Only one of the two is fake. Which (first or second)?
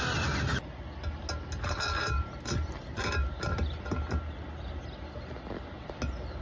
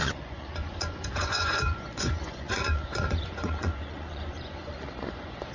second